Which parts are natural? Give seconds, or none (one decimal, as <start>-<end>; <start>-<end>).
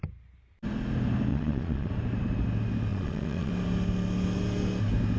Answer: 0.0-1.3; 1.9-2.9; 3.5-5.2